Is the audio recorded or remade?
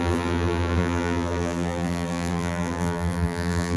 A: remade